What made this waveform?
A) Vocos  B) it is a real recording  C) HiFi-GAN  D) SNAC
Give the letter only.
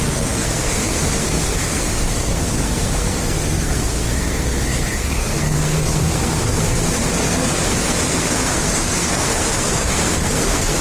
D